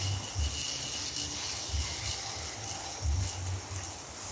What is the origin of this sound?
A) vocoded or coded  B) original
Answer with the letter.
B